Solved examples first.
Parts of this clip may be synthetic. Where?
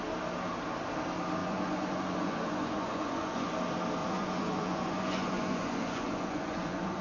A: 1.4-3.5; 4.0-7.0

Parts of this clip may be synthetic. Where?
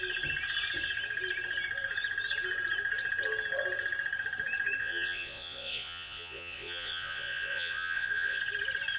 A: 4.8-8.4